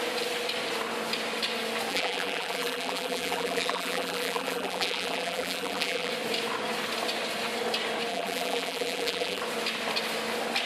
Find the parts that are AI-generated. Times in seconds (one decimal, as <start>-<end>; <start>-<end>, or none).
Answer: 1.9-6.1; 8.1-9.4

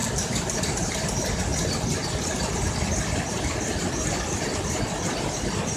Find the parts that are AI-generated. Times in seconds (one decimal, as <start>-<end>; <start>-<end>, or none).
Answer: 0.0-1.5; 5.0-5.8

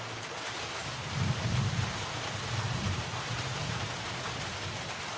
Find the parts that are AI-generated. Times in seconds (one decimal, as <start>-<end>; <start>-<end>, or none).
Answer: 0.8-3.9

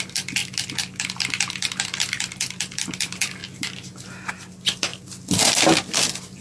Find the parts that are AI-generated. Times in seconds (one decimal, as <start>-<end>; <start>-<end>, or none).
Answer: 0.0-0.4; 1.8-3.4; 4.3-4.9; 6.0-6.4

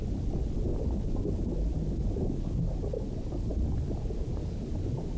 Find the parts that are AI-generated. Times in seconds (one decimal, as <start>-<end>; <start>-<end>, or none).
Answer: none

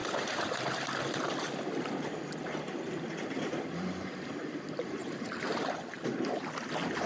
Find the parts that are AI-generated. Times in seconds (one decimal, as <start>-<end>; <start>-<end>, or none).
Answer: 0.0-5.0; 6.1-7.1

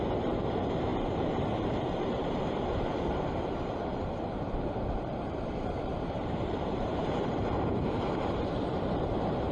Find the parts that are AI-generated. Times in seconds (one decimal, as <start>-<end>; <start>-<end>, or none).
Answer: 0.0-9.5

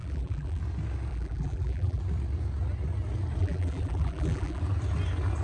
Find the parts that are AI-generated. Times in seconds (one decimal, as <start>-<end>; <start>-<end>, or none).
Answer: 0.0-0.6; 1.1-2.0; 3.4-4.6